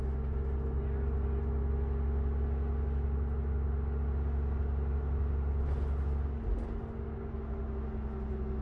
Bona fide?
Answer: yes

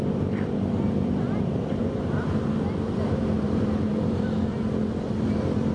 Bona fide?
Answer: no